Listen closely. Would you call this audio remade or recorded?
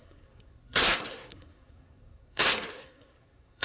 remade